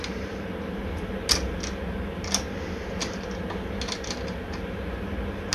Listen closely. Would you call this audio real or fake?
real